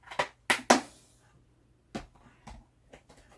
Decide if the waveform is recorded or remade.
recorded